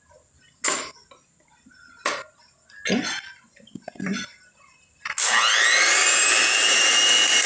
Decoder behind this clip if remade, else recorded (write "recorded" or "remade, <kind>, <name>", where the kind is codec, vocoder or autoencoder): recorded